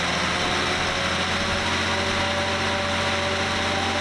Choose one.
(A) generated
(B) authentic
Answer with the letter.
B